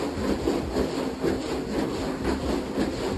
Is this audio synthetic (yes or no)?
no